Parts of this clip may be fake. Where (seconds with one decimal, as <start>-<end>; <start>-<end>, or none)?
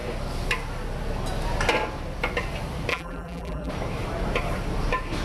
2.9-3.7